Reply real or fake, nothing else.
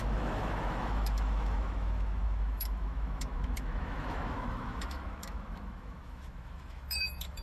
fake